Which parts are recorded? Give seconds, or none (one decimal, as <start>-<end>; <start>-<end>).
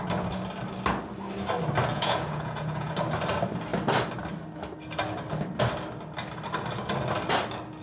0.0-1.9; 2.9-7.8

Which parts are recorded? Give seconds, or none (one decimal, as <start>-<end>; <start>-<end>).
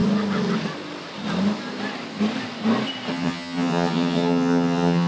0.0-3.1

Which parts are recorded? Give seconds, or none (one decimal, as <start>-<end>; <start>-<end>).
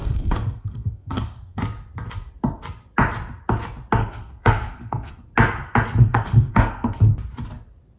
1.6-4.0; 5.1-6.0; 7.1-8.0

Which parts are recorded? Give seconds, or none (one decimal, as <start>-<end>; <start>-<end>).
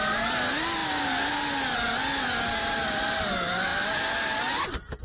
0.0-5.0